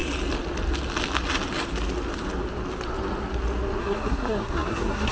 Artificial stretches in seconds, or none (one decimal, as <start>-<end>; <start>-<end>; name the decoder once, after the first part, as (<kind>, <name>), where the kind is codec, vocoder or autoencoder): 3.8-5.1 (codec, SNAC)